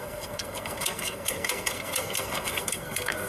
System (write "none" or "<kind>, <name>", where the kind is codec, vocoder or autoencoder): codec, SNAC